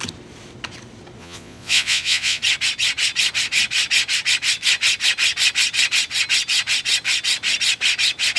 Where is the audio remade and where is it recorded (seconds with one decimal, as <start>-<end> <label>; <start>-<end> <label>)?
0.0-1.2 recorded; 1.2-2.4 remade; 2.4-8.4 recorded